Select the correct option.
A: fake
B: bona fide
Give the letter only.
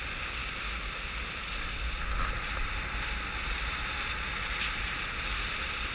B